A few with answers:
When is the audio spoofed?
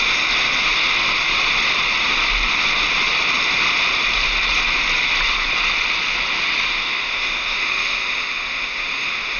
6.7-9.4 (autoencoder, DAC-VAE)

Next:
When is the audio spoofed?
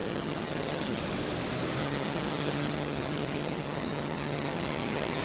0.0-1.0 (vocoder, HiFi-GAN); 1.8-5.2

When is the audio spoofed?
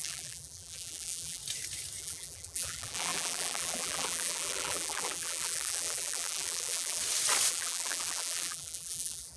0.0-1.4 (vocoder, BigVGAN v2); 2.0-7.0; 7.5-9.4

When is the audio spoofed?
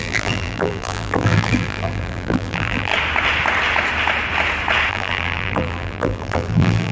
0.0-2.9 (vocoder, BigVGAN v2); 4.9-6.9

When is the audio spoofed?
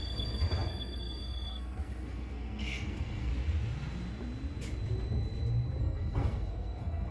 0.0-3.3 (codec, SNAC); 5.8-7.1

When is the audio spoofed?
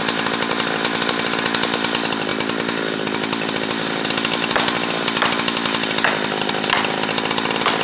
none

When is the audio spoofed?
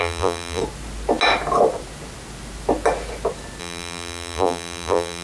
0.0-0.6 (vocoder, BigVGAN v2); 3.6-5.2